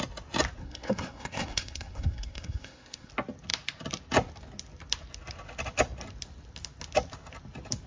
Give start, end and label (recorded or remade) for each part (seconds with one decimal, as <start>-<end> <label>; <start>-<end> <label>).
0.0-0.6 recorded; 0.6-3.1 remade; 3.1-7.9 recorded